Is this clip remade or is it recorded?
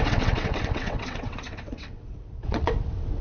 remade